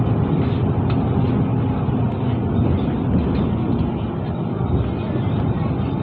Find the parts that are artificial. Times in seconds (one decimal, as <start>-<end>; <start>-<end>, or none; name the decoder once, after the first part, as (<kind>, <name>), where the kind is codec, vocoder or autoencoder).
none